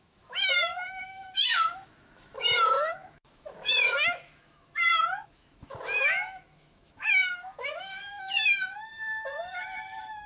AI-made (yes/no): yes